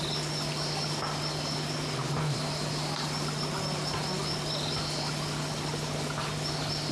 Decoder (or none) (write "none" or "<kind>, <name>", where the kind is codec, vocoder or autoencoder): none